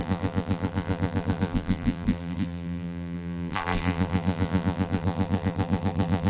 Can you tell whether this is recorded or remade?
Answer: remade